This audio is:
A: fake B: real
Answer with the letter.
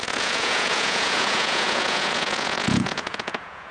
A